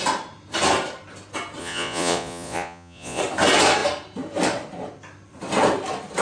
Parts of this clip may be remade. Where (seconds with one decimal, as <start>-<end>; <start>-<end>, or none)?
1.6-3.2